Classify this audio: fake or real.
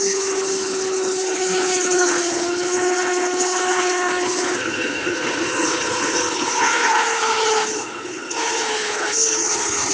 fake